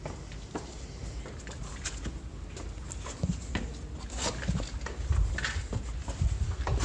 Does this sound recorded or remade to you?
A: recorded